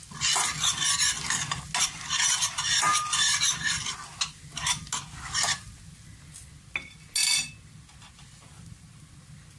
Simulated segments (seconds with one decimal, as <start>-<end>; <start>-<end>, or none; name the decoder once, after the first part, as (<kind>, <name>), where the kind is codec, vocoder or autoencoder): none